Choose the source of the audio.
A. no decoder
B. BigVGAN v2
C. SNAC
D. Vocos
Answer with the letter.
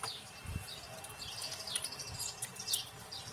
A